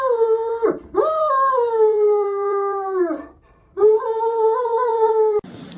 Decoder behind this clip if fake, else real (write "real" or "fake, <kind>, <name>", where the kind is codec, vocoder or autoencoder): fake, vocoder, BigVGAN v2